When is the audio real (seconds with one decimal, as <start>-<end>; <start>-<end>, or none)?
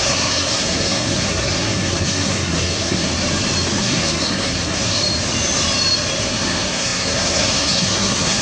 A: 3.1-3.8; 5.0-6.2